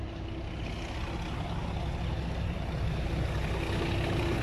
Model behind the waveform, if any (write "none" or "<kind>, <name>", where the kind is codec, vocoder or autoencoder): none